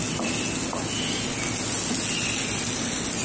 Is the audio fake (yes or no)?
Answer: no